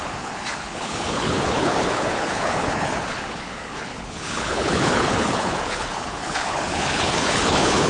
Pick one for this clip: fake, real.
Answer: fake